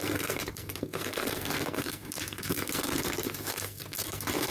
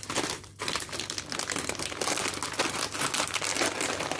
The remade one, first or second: first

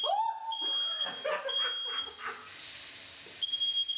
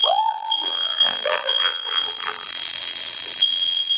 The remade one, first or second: second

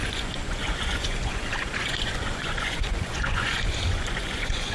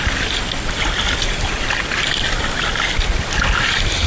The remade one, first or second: first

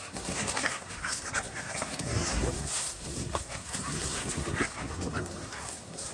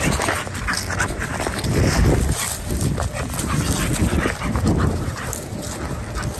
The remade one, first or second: first